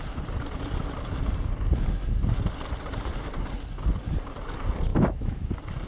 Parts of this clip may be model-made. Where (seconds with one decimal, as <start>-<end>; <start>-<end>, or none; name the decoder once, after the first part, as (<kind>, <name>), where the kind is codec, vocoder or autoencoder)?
4.9-5.5 (autoencoder, DAC-VAE)